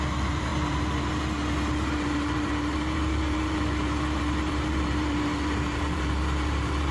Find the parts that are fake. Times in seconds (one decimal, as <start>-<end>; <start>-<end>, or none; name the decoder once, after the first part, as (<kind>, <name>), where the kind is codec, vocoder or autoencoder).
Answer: 0.0-6.9 (vocoder, BigVGAN v2)